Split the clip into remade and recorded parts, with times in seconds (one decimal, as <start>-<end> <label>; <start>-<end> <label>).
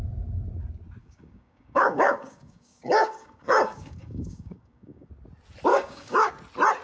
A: 0.0-1.0 recorded; 1.0-5.1 remade; 5.1-5.7 recorded; 5.7-6.3 remade; 6.3-6.8 recorded